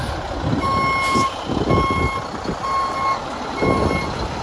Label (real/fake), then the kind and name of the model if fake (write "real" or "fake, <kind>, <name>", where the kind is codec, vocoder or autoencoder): real